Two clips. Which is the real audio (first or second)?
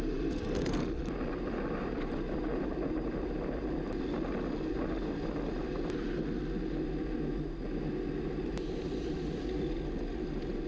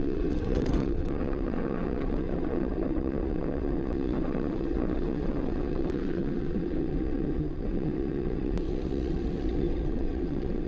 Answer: first